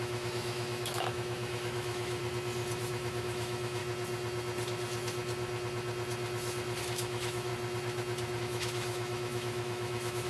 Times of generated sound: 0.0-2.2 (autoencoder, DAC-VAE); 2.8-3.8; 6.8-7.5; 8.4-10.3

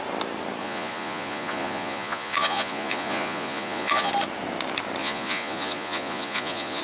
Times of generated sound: 0.6-4.1 (vocoder, Vocos); 5.0-6.8

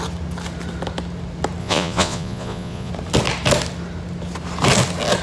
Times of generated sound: 1.6-2.9 (vocoder, Vocos)

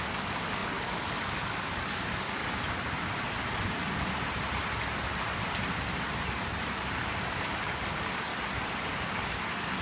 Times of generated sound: 0.0-2.4 (codec, DAC); 7.4-8.3; 8.8-9.8